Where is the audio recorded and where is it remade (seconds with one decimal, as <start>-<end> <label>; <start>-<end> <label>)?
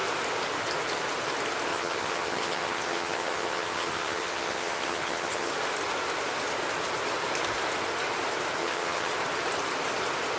0.0-1.7 recorded; 1.7-5.5 remade; 5.5-8.6 recorded; 8.6-9.1 remade; 9.1-10.4 recorded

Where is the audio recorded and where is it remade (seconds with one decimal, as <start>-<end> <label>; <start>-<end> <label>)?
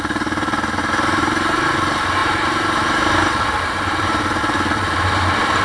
0.0-0.8 recorded; 0.8-1.7 remade; 1.7-2.2 recorded; 2.2-4.4 remade; 4.4-5.6 recorded